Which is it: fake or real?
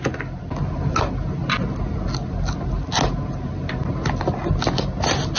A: real